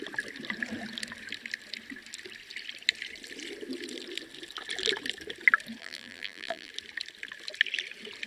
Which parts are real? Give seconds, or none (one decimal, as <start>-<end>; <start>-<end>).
0.0-5.8; 6.7-8.3